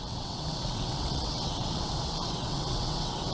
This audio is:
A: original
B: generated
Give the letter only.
B